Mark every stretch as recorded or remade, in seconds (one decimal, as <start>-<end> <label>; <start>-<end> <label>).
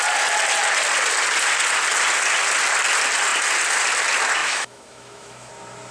0.0-4.4 recorded; 4.4-5.5 remade; 5.5-5.9 recorded